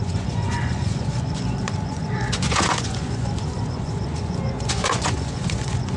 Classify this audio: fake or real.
fake